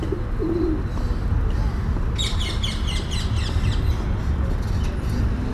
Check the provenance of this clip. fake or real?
real